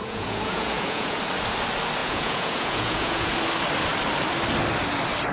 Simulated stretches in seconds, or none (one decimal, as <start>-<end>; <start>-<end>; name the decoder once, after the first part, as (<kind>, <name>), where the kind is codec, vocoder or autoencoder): 0.0-1.2 (vocoder, Vocos); 2.0-3.3